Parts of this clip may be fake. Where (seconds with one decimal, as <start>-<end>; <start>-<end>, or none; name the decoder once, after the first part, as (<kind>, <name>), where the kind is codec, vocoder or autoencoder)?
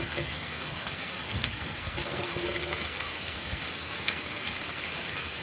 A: 0.0-5.4 (codec, SNAC)